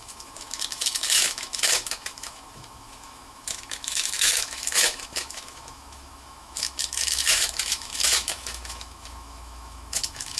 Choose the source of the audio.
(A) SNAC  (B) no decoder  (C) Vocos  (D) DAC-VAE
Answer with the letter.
D